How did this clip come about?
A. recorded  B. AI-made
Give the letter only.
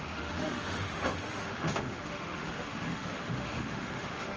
B